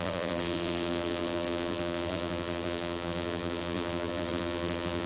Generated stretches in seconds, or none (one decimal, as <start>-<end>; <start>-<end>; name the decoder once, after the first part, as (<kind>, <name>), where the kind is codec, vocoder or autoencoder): 0.0-5.1 (vocoder, BigVGAN v2)